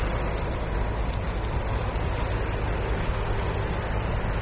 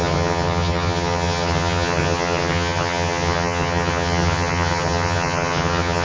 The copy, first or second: second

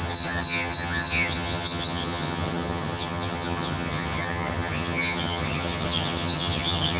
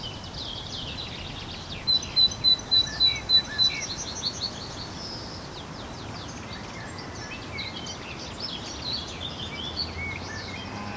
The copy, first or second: first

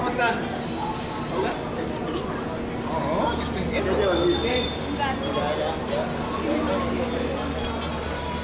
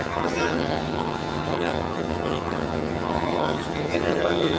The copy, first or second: second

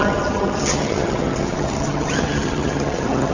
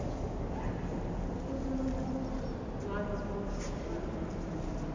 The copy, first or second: first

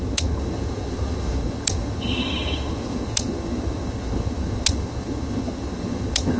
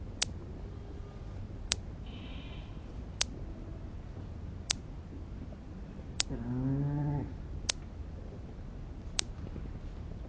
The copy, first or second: first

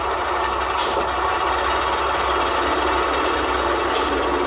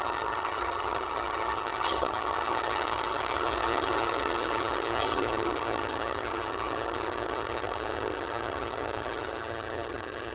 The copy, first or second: second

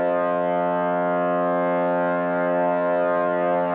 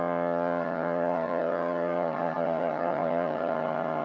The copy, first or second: second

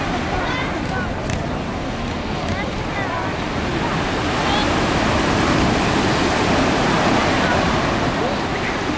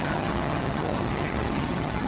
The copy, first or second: second